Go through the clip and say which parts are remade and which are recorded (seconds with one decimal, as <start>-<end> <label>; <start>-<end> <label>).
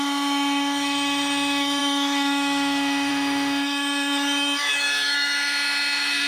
0.0-6.3 remade